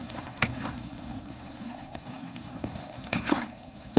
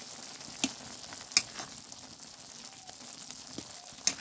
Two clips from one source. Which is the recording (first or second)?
second